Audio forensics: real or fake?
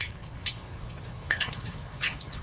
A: fake